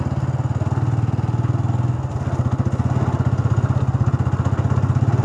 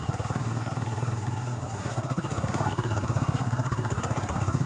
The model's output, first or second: second